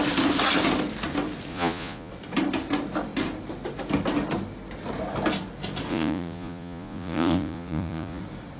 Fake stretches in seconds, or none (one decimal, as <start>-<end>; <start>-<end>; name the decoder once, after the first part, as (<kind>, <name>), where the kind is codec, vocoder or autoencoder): 1.5-2.1 (vocoder, Vocos); 5.9-8.2